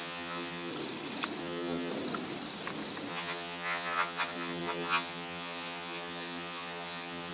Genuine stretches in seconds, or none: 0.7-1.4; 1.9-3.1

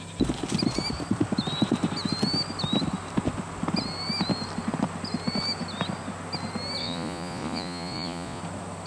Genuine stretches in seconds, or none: 0.0-6.8; 8.4-8.9

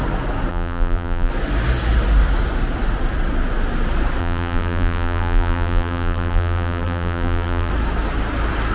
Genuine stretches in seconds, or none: 0.0-0.5; 1.3-4.2; 7.7-8.7

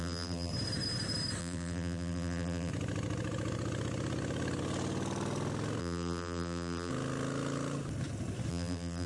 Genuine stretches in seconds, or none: 0.5-1.4; 2.7-5.8; 6.9-8.5

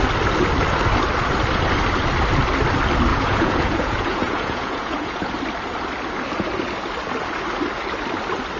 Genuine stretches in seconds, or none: 0.0-3.1; 5.3-8.6